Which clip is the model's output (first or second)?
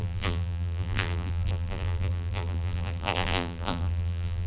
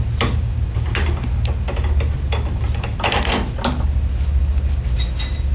first